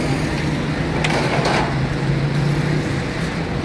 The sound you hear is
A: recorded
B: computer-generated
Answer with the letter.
A